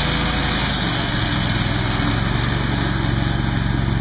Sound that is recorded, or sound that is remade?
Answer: recorded